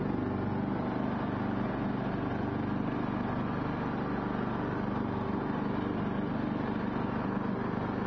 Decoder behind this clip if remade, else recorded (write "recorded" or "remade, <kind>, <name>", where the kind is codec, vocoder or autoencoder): recorded